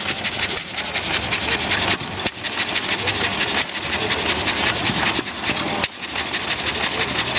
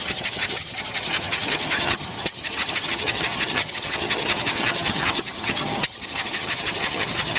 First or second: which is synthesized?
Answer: second